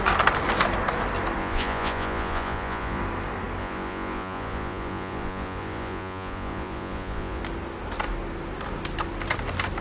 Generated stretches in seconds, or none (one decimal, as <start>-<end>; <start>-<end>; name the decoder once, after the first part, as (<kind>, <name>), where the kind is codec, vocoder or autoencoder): 1.4-3.0 (vocoder, Vocos); 3.6-7.4